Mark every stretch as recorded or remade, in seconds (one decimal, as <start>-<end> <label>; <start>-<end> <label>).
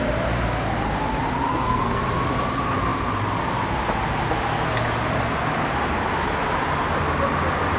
0.0-1.5 recorded; 1.5-2.0 remade; 2.0-7.8 recorded